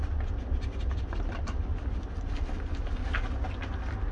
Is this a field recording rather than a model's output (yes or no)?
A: yes